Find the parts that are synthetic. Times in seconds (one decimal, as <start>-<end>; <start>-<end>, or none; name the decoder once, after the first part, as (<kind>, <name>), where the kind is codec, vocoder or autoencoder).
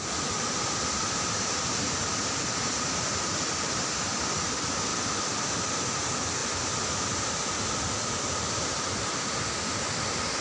1.0-3.8 (vocoder, BigVGAN v2)